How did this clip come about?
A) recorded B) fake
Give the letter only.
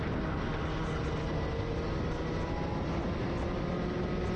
A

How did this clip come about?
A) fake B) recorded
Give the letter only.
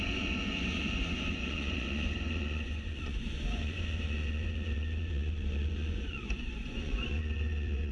A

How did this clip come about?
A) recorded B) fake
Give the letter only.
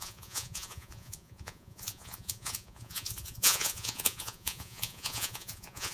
B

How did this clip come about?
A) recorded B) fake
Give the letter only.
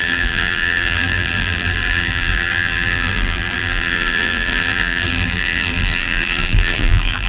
B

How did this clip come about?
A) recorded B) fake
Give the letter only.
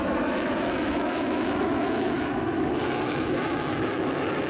B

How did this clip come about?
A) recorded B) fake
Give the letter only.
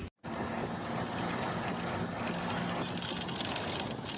A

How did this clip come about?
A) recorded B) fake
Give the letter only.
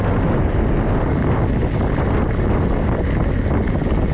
A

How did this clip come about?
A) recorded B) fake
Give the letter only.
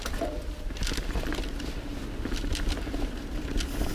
A